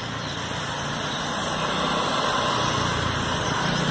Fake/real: real